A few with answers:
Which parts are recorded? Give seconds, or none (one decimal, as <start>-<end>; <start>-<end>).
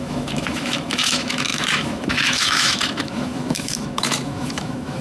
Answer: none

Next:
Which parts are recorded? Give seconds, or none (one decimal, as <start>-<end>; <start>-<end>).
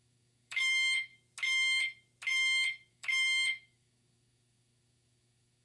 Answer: 1.1-2.9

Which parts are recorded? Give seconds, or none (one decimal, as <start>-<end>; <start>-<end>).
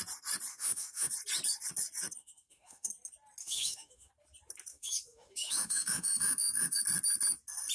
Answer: 0.0-0.5; 1.1-2.2; 2.9-3.4; 4.1-4.7; 6.8-7.7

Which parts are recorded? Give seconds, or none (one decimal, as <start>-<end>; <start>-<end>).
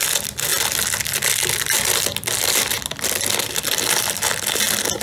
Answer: 0.0-5.0